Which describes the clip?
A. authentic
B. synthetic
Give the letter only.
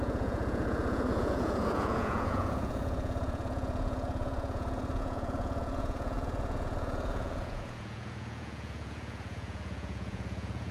B